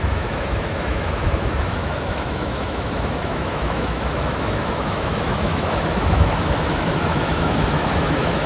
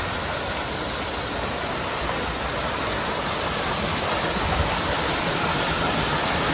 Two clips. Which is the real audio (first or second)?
second